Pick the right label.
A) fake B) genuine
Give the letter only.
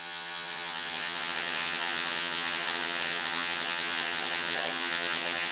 A